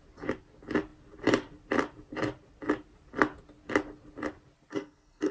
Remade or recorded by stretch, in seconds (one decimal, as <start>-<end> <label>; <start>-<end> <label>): 0.0-4.7 recorded; 4.7-5.3 remade